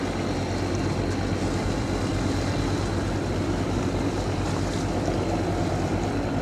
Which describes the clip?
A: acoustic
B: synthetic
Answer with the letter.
A